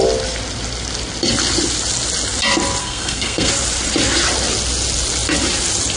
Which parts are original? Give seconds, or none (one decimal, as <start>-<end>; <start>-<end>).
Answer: 0.0-2.8; 3.5-6.0